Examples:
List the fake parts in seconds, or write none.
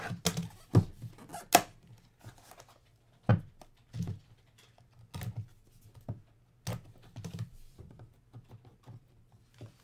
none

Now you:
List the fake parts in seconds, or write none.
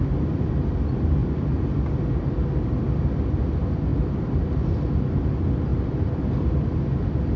1.2-2.1 (vocoder, BigVGAN v2); 3.9-4.6; 5.7-6.7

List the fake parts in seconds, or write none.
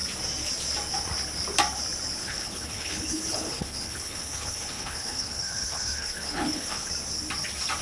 2.2-6.9 (codec, HILCodec)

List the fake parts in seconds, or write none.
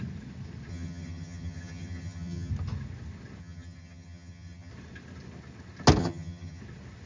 0.7-2.5 (vocoder, HiFi-GAN); 3.4-4.7; 6.0-6.6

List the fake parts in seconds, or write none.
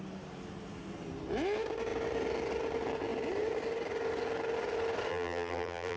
5.1-6.0 (vocoder, BigVGAN v2)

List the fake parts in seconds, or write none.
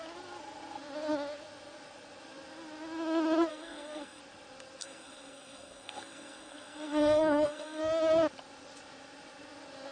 3.5-4.2 (codec, SNAC); 4.8-7.8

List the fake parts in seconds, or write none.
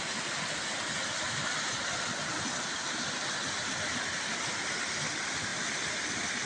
none